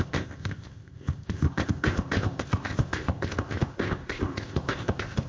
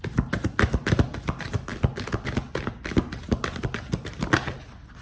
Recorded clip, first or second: second